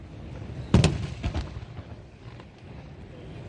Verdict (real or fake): real